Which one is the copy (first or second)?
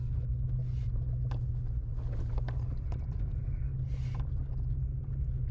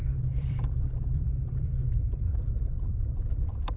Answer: second